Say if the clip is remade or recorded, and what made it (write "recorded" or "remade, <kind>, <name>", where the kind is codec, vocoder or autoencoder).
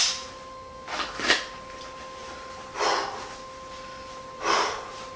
recorded